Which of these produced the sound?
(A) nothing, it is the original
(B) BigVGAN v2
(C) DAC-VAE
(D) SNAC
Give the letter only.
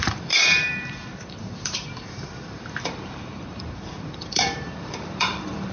B